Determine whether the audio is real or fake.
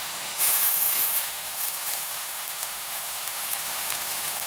fake